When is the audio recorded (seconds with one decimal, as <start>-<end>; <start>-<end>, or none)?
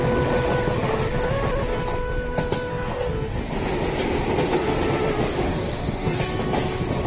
0.0-2.7; 3.4-5.3; 6.2-7.1